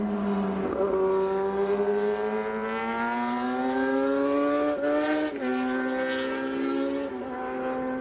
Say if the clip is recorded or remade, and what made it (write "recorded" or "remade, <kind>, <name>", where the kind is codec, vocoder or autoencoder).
recorded